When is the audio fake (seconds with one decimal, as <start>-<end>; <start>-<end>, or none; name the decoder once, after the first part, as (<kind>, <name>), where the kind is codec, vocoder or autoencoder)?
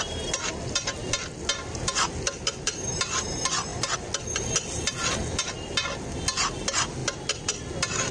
none